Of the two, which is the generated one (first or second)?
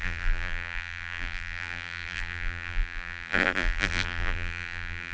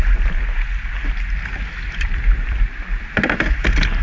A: first